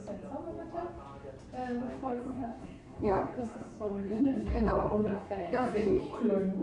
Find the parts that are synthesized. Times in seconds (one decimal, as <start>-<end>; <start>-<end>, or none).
2.0-6.0